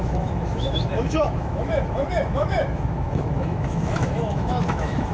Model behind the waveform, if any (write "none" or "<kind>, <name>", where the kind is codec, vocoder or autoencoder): autoencoder, DAC-VAE